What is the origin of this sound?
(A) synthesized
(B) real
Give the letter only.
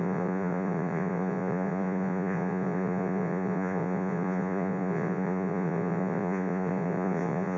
A